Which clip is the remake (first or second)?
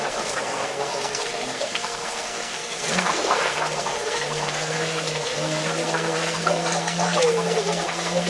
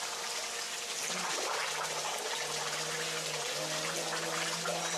first